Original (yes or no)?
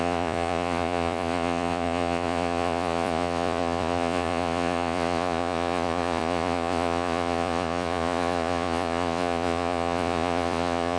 no